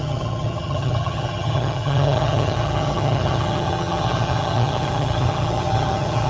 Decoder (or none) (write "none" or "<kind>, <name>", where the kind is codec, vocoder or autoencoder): vocoder, HiFi-GAN